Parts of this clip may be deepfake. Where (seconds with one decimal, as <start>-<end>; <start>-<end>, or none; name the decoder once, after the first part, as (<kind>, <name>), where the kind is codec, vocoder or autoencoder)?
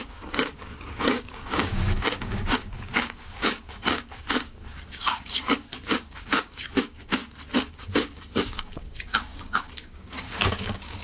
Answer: 0.0-7.2 (codec, DAC); 7.7-11.0